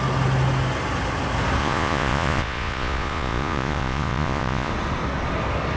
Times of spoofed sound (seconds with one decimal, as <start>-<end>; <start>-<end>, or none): 1.6-4.7